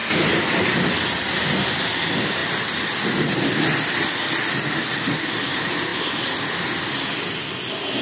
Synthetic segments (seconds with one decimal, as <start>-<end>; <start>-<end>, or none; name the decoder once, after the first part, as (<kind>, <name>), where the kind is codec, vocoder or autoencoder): none